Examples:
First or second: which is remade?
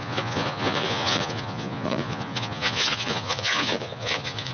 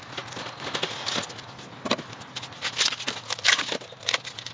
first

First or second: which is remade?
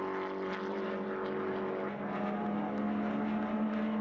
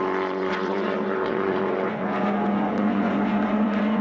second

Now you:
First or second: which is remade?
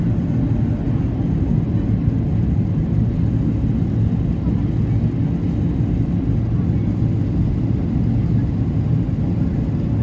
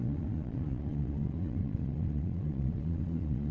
second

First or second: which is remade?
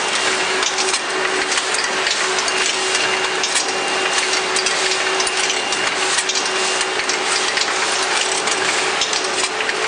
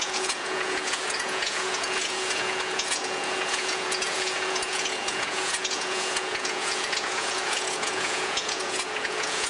second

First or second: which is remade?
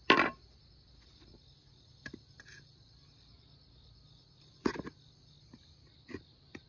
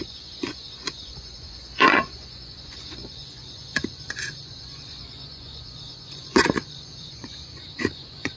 second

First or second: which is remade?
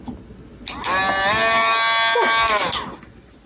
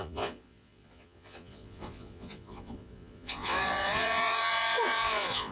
second